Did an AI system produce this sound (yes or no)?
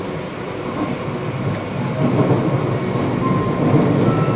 no